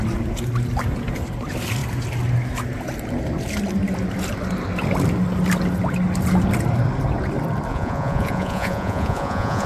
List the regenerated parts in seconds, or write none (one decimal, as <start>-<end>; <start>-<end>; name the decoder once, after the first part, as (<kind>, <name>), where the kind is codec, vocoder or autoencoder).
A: 7.7-9.7 (vocoder, Vocos)